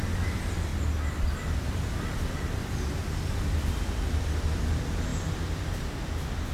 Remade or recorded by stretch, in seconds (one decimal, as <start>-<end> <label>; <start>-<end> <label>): 0.0-0.7 remade; 0.7-2.1 recorded; 2.1-5.1 remade; 5.1-5.6 recorded; 5.6-6.5 remade